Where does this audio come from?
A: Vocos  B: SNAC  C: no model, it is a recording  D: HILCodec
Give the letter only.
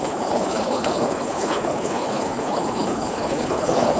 D